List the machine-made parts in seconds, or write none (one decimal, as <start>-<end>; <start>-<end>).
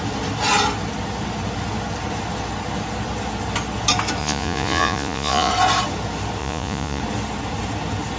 4.2-5.5; 6.4-7.0